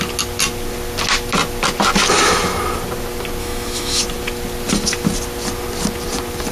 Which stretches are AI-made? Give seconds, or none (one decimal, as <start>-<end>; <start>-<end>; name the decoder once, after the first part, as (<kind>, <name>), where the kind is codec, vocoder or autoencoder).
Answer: 3.4-4.0 (autoencoder, DAC-VAE)